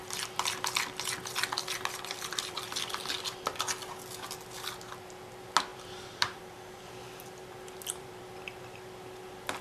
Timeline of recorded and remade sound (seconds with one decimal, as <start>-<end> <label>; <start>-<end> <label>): 0.0-1.6 recorded; 1.6-3.4 remade; 3.4-5.7 recorded; 5.7-8.6 remade; 8.6-9.6 recorded